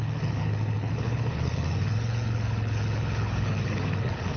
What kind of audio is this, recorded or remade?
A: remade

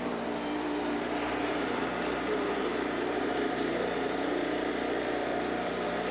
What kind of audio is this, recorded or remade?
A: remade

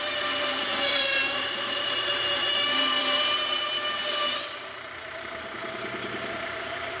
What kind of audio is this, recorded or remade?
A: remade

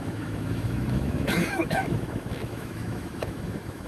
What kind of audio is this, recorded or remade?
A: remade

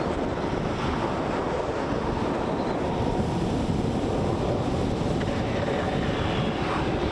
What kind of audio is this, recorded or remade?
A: recorded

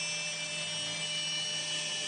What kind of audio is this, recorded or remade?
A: recorded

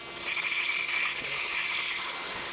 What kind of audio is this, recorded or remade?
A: recorded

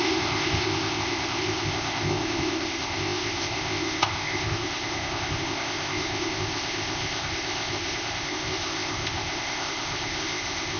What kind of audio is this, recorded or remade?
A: remade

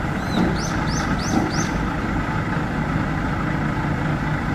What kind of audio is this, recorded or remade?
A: recorded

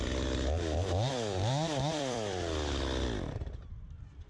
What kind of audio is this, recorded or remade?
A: remade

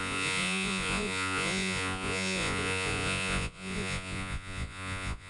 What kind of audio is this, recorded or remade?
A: remade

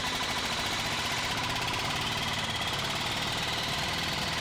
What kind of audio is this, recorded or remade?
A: recorded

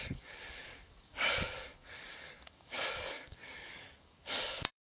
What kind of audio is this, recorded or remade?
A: remade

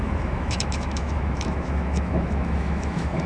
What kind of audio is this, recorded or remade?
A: remade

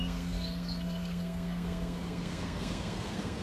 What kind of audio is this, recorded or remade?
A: remade